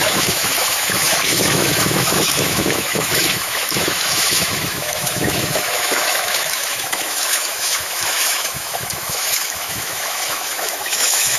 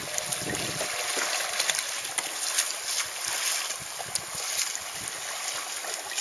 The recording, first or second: second